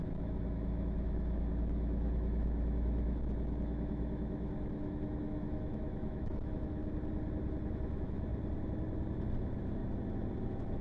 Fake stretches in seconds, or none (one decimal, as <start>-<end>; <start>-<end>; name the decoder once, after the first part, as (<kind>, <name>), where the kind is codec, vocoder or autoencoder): 0.0-6.8 (autoencoder, DAC-VAE); 7.7-8.3; 9.4-9.8; 10.4-10.8